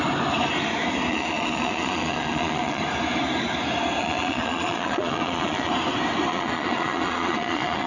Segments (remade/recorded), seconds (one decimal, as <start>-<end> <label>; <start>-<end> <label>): 0.0-1.1 recorded; 1.1-2.8 remade; 2.8-4.0 recorded; 4.0-5.7 remade; 5.7-6.3 recorded; 6.3-7.9 remade